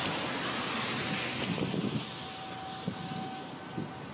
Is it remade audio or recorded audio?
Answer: recorded